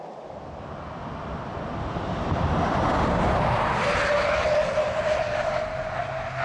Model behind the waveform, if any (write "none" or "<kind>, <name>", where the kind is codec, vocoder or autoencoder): none